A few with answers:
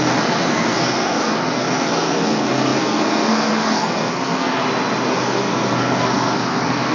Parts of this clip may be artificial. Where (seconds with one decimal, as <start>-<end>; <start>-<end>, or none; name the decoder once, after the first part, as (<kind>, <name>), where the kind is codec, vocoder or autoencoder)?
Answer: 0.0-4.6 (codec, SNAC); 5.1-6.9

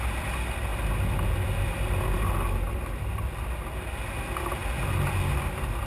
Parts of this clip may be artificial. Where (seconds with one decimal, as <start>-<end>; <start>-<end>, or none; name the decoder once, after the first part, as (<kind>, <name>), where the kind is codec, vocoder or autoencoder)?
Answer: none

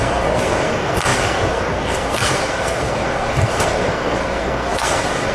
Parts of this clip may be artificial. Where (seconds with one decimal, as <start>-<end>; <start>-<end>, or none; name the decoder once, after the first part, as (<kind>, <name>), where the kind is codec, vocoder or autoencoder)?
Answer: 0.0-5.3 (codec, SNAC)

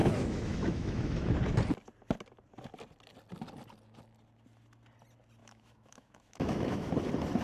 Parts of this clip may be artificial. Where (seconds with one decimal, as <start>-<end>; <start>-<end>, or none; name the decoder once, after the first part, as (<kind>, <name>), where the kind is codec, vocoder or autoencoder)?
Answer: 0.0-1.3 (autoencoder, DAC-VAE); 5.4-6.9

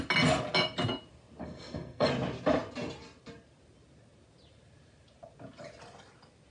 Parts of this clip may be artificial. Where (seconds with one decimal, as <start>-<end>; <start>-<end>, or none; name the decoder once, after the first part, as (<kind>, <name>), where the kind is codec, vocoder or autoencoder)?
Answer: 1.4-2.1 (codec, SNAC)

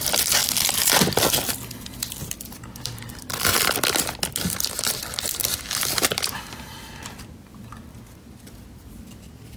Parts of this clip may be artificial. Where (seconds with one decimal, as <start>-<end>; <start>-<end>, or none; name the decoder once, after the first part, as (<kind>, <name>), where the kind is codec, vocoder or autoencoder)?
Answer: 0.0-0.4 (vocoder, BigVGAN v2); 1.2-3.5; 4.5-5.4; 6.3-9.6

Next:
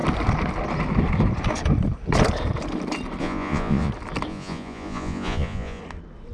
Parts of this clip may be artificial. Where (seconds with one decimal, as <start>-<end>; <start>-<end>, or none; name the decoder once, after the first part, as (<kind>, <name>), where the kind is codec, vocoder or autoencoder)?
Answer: 3.2-3.9 (vocoder, Vocos); 4.3-5.8